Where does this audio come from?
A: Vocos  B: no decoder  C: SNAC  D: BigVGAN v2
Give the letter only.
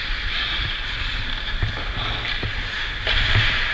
B